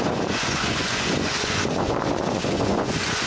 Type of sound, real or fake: fake